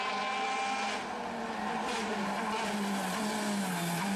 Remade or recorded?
recorded